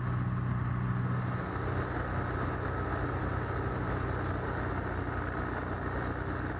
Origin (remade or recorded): recorded